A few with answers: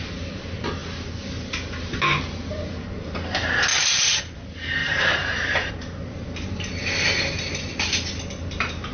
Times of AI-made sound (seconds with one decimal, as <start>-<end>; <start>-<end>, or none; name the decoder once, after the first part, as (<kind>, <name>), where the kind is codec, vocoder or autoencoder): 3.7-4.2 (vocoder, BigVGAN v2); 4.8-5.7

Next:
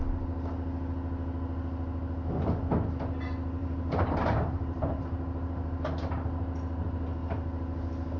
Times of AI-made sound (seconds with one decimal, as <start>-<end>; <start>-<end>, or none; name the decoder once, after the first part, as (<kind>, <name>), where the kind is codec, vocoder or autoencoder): 3.6-5.0 (vocoder, BigVGAN v2)

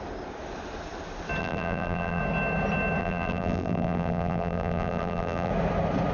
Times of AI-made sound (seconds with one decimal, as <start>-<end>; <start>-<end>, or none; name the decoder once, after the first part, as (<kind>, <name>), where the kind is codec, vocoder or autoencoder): 1.4-2.2 (vocoder, BigVGAN v2); 3.0-5.5

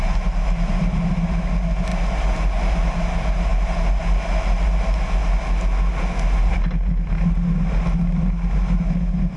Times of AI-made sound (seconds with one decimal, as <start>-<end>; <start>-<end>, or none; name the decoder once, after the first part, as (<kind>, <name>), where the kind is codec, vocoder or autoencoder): none